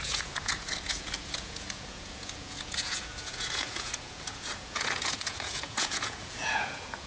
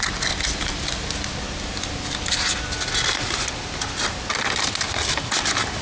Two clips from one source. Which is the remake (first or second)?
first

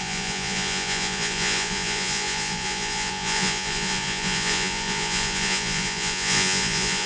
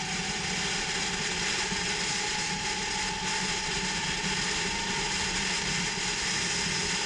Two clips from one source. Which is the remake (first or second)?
first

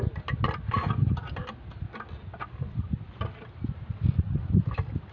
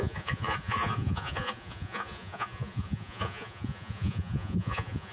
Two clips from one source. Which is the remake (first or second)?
second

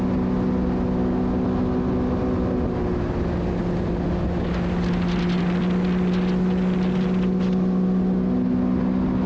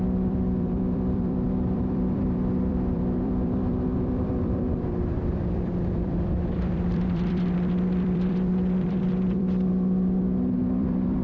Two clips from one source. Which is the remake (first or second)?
second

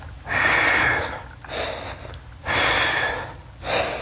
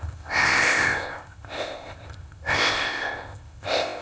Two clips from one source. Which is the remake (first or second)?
second